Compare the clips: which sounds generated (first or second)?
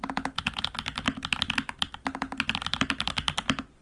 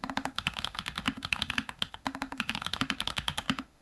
second